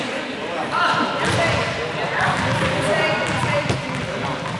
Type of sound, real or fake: real